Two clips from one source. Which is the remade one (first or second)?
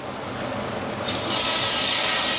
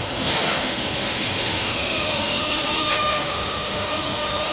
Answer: second